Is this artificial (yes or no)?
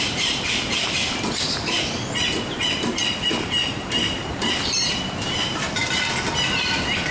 yes